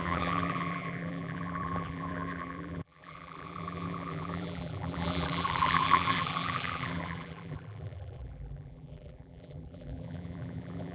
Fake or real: fake